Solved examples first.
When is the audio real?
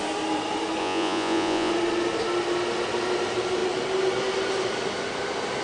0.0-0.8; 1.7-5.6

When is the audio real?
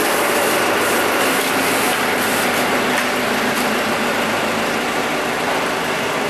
0.0-6.3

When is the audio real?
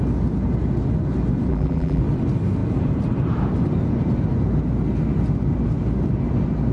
0.0-1.5; 2.0-6.7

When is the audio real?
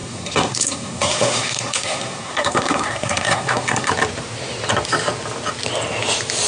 3.9-6.5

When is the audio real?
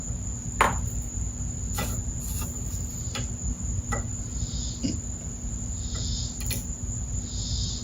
0.0-4.1; 4.6-7.8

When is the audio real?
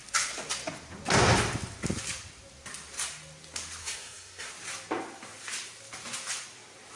0.0-3.8; 4.5-7.0